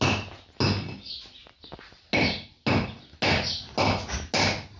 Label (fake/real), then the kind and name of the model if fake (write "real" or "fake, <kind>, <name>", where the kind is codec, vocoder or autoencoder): real